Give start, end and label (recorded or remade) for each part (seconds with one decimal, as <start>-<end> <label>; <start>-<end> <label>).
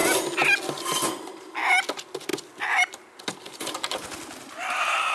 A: 0.0-5.1 recorded